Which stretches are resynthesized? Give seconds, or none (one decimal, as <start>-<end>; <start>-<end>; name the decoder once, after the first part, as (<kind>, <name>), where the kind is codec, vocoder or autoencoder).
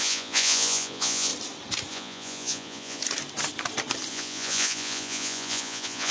0.0-1.3 (vocoder, Vocos); 1.9-3.0; 4.1-6.1